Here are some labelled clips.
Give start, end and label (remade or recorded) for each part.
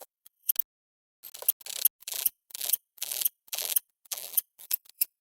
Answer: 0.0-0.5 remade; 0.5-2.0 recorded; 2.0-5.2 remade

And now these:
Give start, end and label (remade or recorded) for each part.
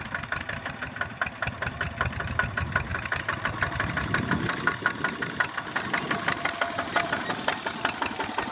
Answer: 0.0-8.5 recorded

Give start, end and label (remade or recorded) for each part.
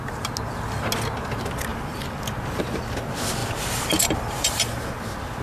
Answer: 0.0-1.7 recorded; 1.7-2.6 remade; 2.6-3.4 recorded; 3.4-4.8 remade; 4.8-5.4 recorded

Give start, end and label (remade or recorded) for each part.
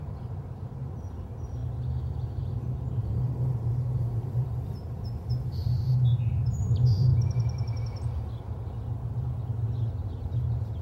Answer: 0.0-1.6 remade; 1.6-2.4 recorded; 2.4-7.1 remade; 7.1-10.1 recorded; 10.1-10.8 remade